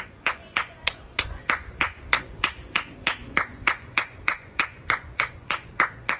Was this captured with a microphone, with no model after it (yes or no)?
no